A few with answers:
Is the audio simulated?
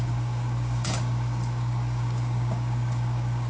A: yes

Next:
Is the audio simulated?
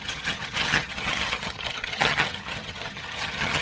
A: yes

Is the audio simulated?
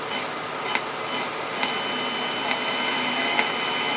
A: no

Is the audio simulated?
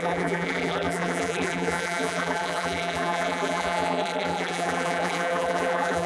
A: yes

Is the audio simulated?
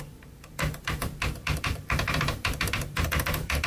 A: yes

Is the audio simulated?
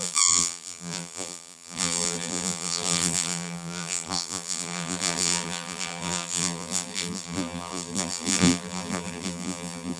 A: yes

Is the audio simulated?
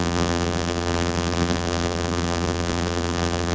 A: yes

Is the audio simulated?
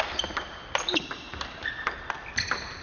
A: no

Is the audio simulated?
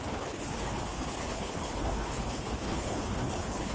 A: yes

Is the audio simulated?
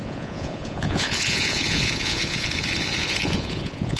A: yes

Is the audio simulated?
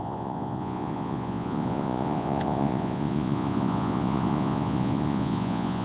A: yes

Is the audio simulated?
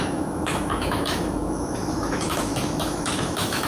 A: yes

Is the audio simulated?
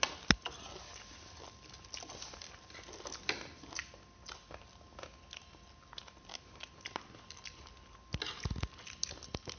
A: no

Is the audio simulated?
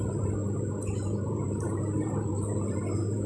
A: yes